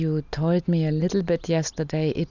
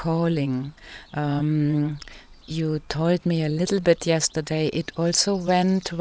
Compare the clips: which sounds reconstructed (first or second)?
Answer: second